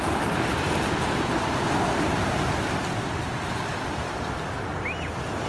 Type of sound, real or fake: real